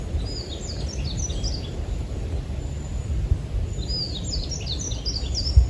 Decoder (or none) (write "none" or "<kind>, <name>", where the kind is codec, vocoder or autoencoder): none